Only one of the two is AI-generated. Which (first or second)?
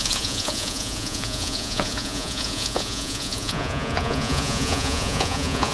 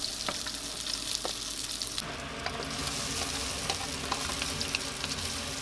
first